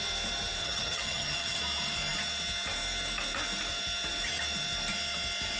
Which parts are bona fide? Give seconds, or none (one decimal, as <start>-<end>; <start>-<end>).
0.0-0.6; 1.6-5.6

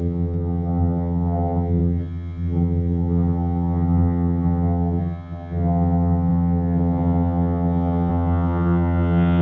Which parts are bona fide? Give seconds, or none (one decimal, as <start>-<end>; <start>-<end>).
none

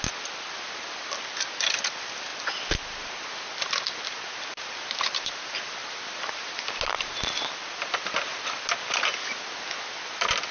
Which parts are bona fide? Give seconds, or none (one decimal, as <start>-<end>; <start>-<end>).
0.0-10.5

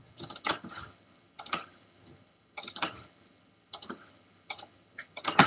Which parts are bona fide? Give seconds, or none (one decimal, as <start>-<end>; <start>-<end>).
none

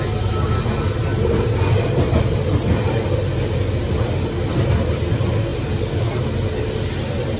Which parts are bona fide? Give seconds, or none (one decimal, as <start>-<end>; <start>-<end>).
0.0-7.4

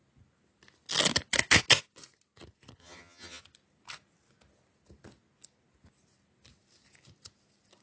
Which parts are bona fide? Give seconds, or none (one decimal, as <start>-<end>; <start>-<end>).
0.0-2.8; 3.4-7.8

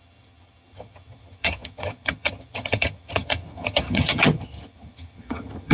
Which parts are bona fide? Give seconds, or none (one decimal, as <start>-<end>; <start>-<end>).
none